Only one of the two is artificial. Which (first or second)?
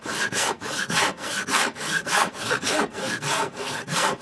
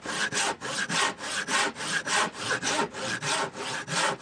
first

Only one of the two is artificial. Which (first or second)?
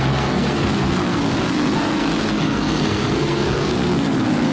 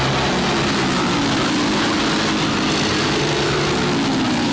first